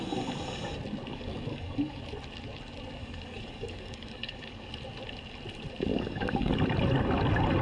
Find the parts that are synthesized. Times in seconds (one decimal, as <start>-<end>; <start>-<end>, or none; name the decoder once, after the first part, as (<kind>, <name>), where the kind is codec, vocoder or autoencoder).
1.1-2.0 (codec, DAC); 3.0-4.7; 5.9-6.5